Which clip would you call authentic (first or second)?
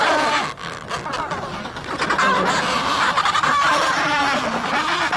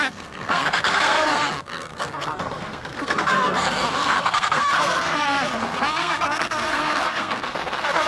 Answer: first